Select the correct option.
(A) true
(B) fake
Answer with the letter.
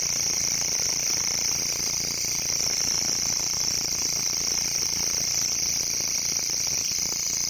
A